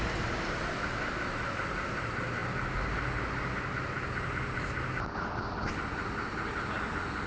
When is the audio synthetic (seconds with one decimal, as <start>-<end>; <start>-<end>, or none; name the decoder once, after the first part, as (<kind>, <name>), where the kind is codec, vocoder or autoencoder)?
none